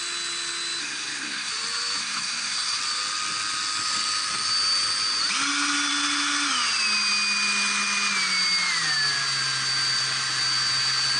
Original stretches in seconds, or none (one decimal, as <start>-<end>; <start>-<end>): 0.0-0.8; 1.5-2.0; 2.8-11.2